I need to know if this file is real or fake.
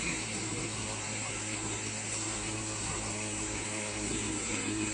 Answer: fake